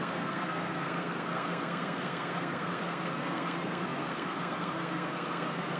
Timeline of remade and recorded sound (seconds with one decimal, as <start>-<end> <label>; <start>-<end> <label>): 0.0-5.8 remade